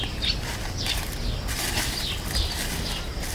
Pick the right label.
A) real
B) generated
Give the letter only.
A